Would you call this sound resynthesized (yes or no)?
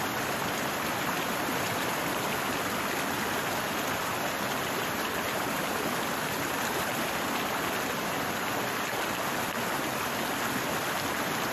no